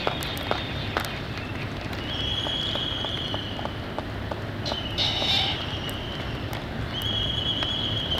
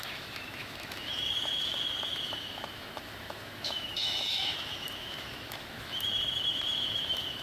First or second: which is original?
first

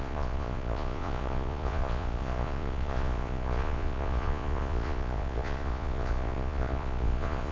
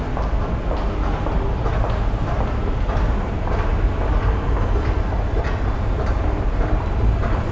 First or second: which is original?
second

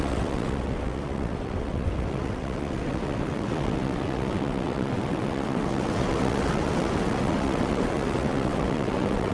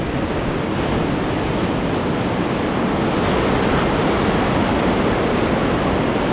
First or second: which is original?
second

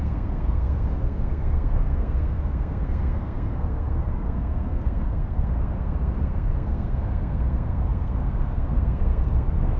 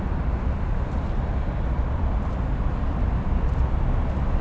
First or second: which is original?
second